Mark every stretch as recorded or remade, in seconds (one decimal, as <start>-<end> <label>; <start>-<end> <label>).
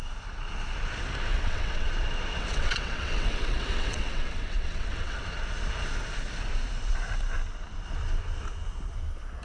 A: 0.0-1.3 recorded; 1.3-1.9 remade; 1.9-2.4 recorded; 2.4-5.2 remade; 5.2-9.4 recorded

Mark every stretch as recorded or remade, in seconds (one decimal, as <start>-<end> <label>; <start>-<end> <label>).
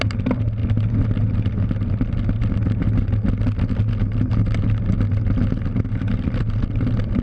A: 0.0-7.2 recorded